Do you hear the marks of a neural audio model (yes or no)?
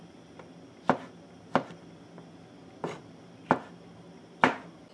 no